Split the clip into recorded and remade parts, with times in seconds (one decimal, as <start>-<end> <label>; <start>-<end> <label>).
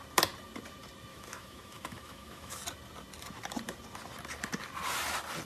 0.0-1.1 recorded; 1.1-2.6 remade; 2.6-5.5 recorded